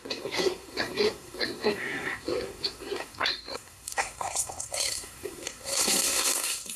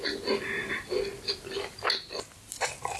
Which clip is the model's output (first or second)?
first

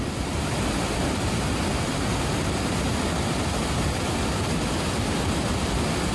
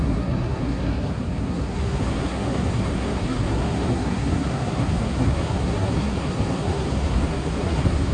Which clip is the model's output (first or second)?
second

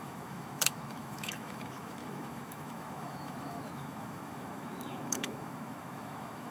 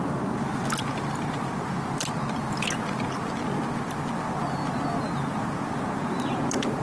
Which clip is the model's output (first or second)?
first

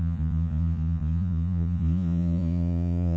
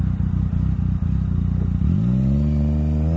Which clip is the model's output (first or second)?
first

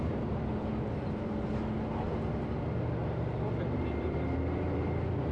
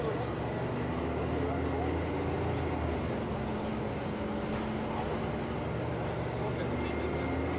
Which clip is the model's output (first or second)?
first